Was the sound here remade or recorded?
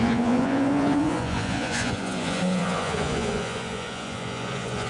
remade